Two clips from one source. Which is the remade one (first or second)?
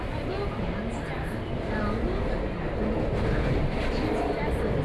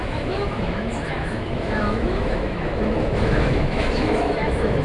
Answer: second